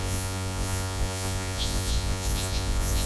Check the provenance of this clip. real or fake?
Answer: fake